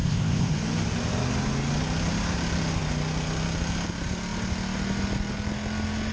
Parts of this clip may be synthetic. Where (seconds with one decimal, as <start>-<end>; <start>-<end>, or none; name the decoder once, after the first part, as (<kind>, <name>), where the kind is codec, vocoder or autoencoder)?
0.0-0.5 (codec, ZipCodec)